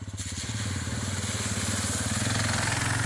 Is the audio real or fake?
real